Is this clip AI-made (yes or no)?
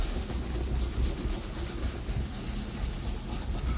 no